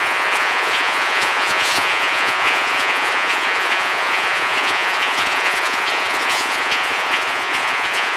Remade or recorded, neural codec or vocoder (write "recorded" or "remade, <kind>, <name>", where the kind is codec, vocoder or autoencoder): remade, vocoder, Vocos